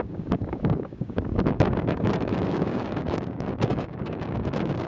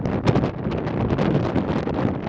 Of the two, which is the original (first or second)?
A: second